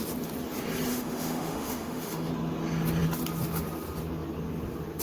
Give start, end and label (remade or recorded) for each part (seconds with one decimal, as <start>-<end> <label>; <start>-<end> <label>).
0.0-0.9 recorded; 0.9-2.3 remade; 2.3-5.0 recorded